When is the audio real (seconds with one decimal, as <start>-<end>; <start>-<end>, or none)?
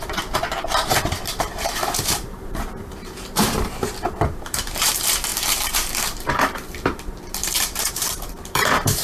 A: none